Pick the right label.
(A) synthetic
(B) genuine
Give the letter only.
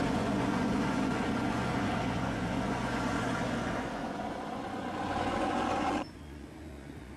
A